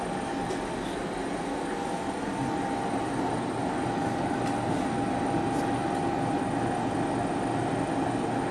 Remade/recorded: recorded